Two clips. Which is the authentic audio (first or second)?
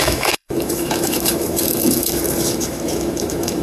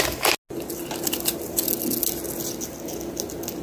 second